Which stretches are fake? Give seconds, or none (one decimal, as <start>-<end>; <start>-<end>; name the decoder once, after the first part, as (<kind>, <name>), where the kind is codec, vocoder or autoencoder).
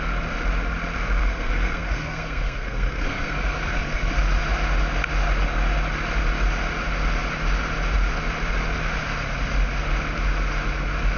1.2-4.1 (codec, SNAC)